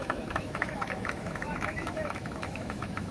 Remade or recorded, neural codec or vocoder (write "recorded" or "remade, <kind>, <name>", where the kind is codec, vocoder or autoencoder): remade, autoencoder, DAC-VAE